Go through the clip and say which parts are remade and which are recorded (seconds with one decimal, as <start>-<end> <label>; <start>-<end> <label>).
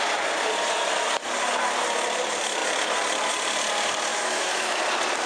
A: 0.0-4.1 recorded; 4.1-4.8 remade; 4.8-5.3 recorded